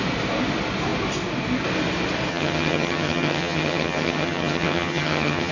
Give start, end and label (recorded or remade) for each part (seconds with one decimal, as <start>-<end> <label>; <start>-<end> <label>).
0.0-2.3 recorded; 2.3-5.5 remade